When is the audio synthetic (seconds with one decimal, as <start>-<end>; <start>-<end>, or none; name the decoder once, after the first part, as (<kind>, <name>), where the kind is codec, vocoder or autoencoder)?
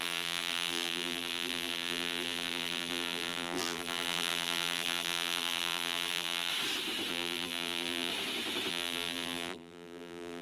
0.0-6.5 (vocoder, BigVGAN v2); 7.1-8.1; 8.7-10.4